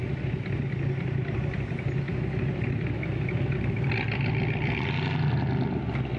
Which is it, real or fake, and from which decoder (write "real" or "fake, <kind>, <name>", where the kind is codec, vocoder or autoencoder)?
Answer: real